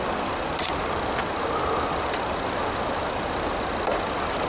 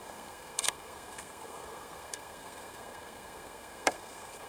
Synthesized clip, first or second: second